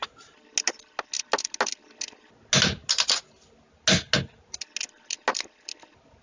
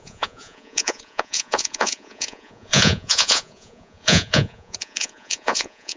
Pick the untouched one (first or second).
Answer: first